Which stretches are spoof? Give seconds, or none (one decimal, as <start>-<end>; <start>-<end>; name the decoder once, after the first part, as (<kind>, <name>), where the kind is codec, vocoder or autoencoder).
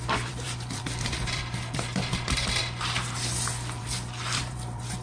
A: 0.0-2.6 (vocoder, BigVGAN v2); 3.8-5.0